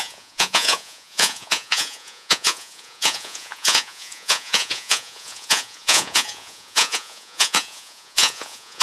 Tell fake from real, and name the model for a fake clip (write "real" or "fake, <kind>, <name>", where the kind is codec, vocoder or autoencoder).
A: fake, vocoder, Vocos